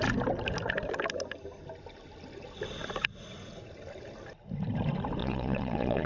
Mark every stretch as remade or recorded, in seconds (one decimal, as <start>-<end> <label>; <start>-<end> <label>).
0.0-5.2 recorded; 5.2-6.1 remade